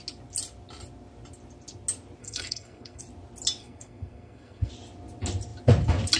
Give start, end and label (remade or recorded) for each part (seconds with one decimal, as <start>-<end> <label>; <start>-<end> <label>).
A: 0.0-2.2 recorded; 2.2-3.0 remade; 3.0-3.6 recorded; 3.6-4.7 remade; 4.7-6.2 recorded